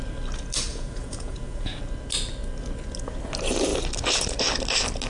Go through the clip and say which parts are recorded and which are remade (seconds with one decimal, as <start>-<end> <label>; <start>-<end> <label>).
0.0-0.7 recorded; 0.7-1.8 remade; 1.8-5.1 recorded